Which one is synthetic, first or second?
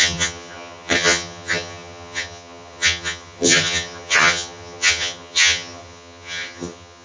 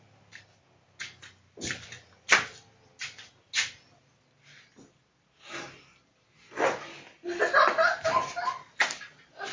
first